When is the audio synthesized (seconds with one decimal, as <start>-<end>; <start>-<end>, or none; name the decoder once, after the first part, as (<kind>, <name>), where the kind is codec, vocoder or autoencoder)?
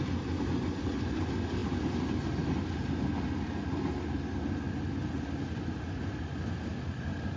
none